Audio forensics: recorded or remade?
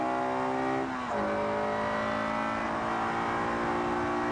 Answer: recorded